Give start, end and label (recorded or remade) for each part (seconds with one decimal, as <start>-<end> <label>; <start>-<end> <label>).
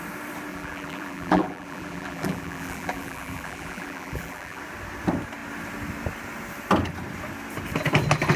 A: 0.0-0.5 recorded; 0.5-4.6 remade; 4.6-8.4 recorded